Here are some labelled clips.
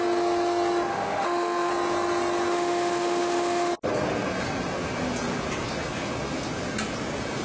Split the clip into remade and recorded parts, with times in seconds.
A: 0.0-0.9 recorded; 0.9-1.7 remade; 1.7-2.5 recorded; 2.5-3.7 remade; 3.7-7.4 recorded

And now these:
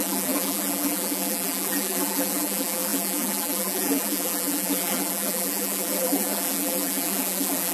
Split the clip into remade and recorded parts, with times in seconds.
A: 0.0-7.7 remade

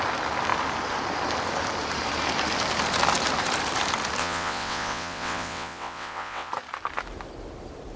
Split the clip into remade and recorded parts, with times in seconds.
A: 0.0-4.2 recorded; 4.2-6.5 remade; 6.5-8.0 recorded

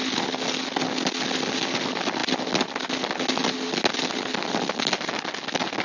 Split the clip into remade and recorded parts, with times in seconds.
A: 0.0-5.8 recorded

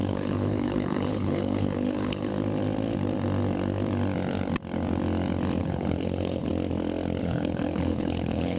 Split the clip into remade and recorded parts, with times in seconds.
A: 0.0-2.3 remade; 2.3-5.6 recorded; 5.6-6.5 remade; 6.5-7.2 recorded; 7.2-8.6 remade

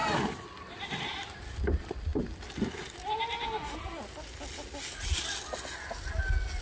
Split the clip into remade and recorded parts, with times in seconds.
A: 0.0-6.6 recorded